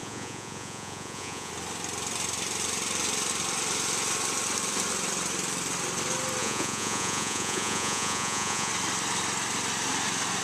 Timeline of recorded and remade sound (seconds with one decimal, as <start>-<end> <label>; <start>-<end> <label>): 0.0-1.5 remade; 1.5-6.4 recorded; 6.4-8.7 remade; 8.7-10.4 recorded